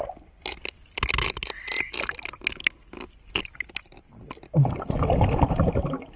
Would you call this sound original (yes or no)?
yes